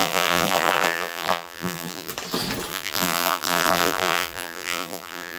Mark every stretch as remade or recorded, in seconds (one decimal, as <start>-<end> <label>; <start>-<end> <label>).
0.0-2.1 remade; 2.1-2.7 recorded; 2.7-5.4 remade